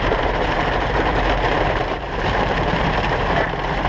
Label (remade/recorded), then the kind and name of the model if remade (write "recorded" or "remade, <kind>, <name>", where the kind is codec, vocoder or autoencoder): remade, vocoder, BigVGAN v2